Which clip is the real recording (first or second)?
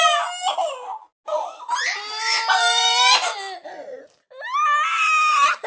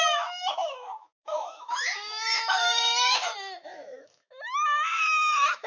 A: first